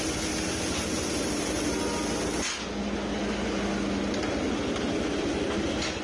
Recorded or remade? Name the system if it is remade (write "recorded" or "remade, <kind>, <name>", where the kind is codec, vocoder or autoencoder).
recorded